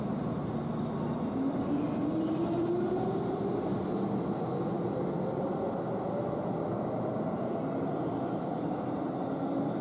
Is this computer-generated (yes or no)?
no